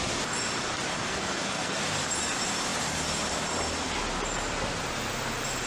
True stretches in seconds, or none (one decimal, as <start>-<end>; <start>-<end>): 0.0-0.9; 1.8-5.7